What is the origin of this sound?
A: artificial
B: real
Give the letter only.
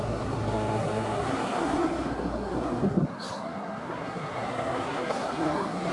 A